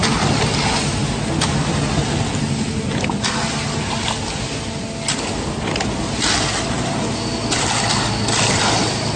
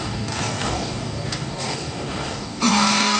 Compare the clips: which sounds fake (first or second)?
second